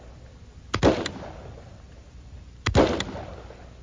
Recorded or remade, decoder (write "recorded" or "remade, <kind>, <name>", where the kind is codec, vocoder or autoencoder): recorded